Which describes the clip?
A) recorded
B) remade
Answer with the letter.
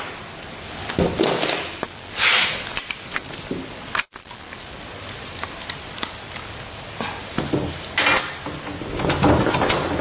A